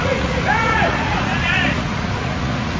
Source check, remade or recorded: remade